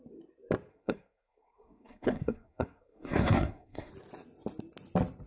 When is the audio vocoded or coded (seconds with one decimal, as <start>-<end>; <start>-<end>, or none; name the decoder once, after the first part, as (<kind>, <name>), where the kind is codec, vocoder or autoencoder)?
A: 0.7-3.9 (codec, SNAC)